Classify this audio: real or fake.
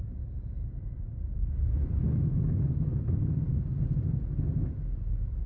real